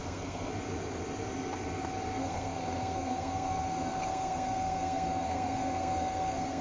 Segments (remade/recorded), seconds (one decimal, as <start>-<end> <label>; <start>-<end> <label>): 0.0-0.5 remade; 0.5-2.2 recorded; 2.2-6.6 remade